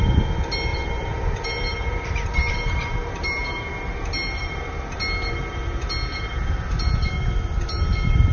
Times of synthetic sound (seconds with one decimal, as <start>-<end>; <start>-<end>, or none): 0.7-4.6